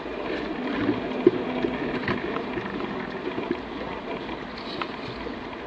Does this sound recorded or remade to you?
recorded